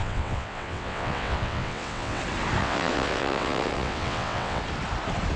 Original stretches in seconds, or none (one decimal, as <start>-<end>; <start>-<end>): 2.2-2.6; 4.6-5.4